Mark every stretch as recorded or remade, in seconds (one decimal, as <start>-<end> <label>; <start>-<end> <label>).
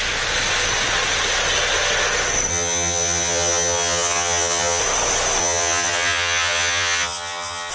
0.0-2.5 recorded; 2.5-4.8 remade; 4.8-5.4 recorded; 5.4-7.7 remade